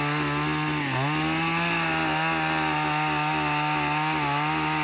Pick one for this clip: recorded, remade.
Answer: recorded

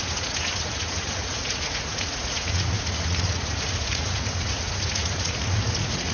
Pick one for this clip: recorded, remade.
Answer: remade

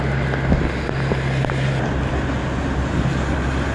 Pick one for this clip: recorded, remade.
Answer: recorded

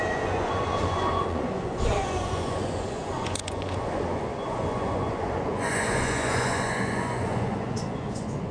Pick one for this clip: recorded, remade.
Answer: remade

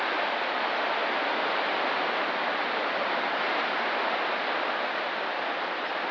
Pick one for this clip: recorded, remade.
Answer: recorded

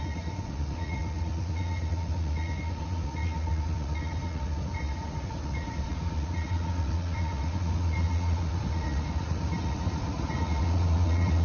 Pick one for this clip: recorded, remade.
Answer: remade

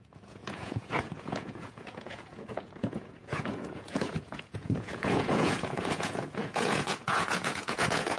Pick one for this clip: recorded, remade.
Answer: remade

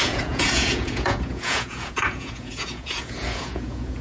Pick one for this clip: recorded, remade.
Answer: remade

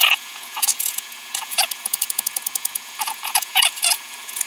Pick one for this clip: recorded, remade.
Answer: remade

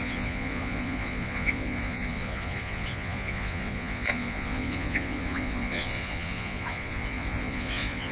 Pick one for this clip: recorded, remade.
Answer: remade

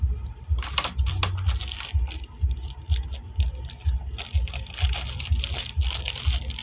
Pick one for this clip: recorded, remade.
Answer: recorded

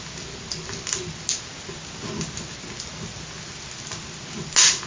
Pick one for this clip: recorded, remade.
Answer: recorded